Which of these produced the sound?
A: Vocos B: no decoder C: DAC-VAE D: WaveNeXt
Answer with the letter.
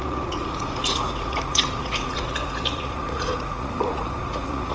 A